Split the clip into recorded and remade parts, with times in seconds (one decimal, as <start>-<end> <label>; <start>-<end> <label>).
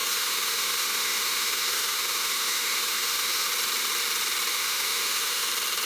0.0-3.5 remade; 3.5-4.5 recorded; 4.5-5.5 remade; 5.5-5.9 recorded